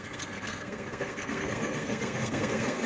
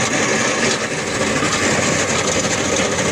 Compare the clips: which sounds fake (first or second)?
first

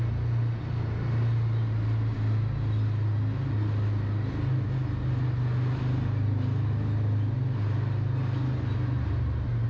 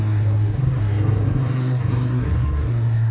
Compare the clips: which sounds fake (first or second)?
second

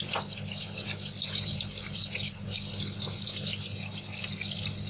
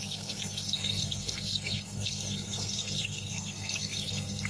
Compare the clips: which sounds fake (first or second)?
second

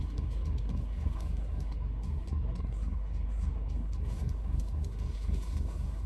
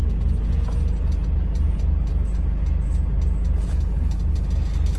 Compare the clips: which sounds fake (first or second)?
first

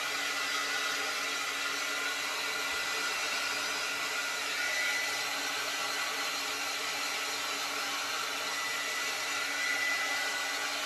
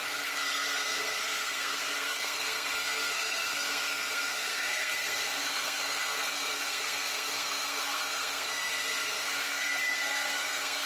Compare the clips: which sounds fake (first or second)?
second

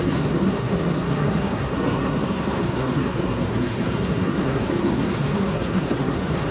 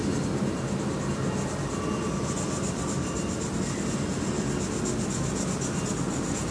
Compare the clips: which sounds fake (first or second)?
first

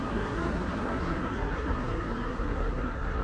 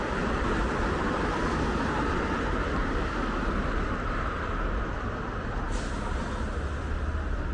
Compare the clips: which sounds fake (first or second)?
first